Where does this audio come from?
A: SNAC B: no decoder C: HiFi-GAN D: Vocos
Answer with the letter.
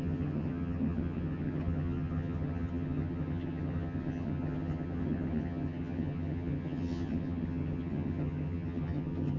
C